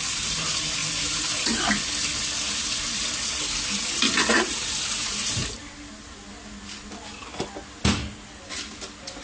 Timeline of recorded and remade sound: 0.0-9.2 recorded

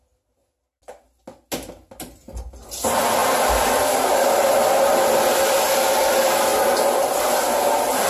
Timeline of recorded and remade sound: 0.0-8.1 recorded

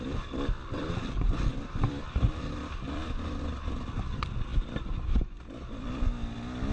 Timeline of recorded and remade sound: 0.0-1.5 recorded; 1.5-3.4 remade; 3.4-6.7 recorded

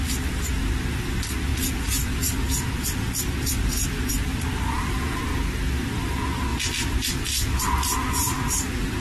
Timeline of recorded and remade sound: 0.0-9.0 recorded

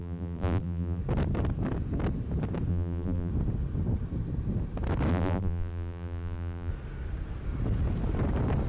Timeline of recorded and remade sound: 0.0-1.0 remade; 1.0-2.7 recorded; 2.7-3.3 remade; 3.3-5.1 recorded; 5.1-6.7 remade; 6.7-8.7 recorded